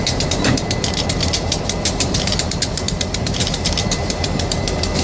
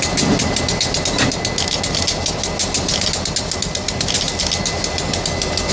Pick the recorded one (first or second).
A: second